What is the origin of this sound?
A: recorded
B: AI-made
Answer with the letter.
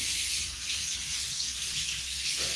B